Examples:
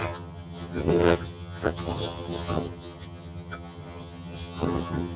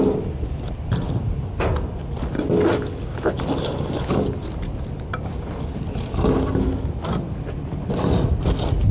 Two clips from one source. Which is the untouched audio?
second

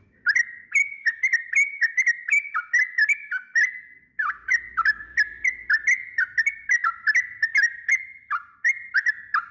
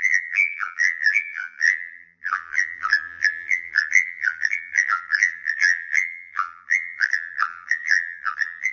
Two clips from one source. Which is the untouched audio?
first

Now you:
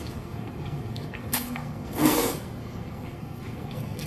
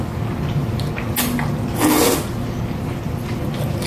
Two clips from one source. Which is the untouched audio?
second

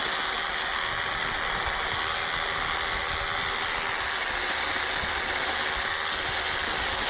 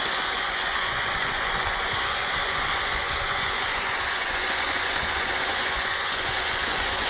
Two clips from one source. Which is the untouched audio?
first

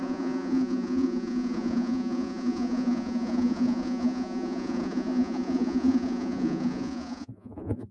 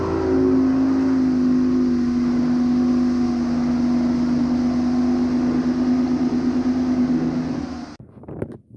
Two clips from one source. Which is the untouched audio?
second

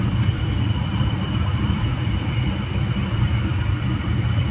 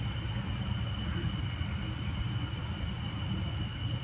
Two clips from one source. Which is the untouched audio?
second